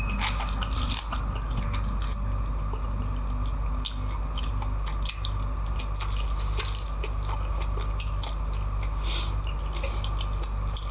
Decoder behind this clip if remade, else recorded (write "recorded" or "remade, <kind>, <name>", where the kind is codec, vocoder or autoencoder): recorded